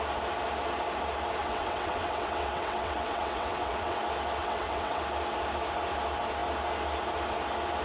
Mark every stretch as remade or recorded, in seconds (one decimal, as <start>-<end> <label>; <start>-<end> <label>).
0.0-1.4 recorded; 1.4-4.0 remade; 4.0-4.4 recorded; 4.4-5.0 remade; 5.0-7.8 recorded

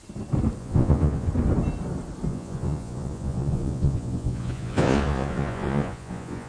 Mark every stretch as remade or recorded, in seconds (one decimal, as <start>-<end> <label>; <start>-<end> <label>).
0.0-0.6 recorded; 0.6-1.3 remade; 1.3-2.3 recorded; 2.3-6.5 remade

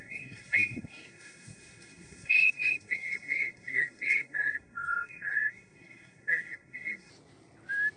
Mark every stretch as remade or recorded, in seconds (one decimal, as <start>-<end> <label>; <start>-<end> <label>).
0.0-7.1 remade; 7.1-8.0 recorded

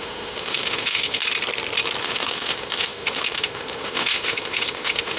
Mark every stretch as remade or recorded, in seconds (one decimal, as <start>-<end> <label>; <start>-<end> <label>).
0.0-1.2 remade; 1.2-2.0 recorded; 2.0-5.2 remade

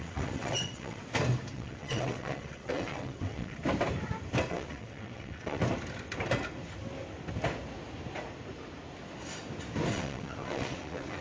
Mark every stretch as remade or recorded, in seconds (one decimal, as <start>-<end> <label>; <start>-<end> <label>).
0.0-1.0 remade; 1.0-1.5 recorded; 1.5-3.6 remade; 3.6-4.5 recorded; 4.5-5.6 remade; 5.6-9.9 recorded; 9.9-11.2 remade

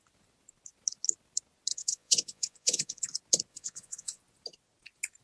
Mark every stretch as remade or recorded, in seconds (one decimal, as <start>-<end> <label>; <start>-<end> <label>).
0.0-1.7 recorded; 1.7-3.1 remade; 3.1-3.5 recorded; 3.5-4.2 remade; 4.2-5.2 recorded

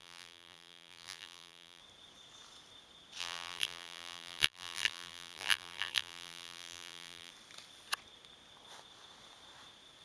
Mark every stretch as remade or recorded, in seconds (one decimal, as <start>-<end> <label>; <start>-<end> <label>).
0.0-1.8 remade; 1.8-3.2 recorded; 3.2-7.3 remade; 7.3-10.0 recorded